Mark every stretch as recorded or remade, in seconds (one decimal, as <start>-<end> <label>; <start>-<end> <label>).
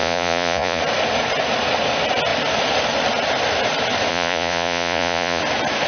0.0-0.8 remade; 0.8-4.1 recorded; 4.1-5.4 remade; 5.4-5.9 recorded